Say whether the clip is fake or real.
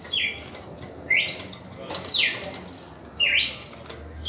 real